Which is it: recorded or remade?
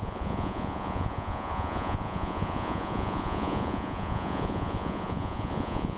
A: remade